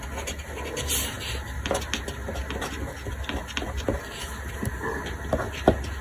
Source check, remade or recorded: recorded